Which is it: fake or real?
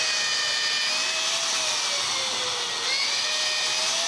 real